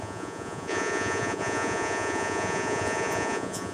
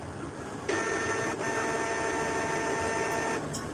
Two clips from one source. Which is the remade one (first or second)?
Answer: first